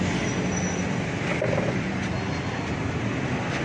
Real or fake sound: real